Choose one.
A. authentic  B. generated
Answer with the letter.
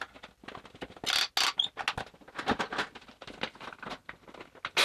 A